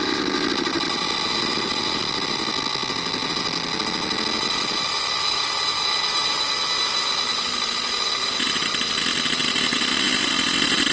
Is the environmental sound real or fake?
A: real